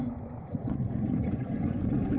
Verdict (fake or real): fake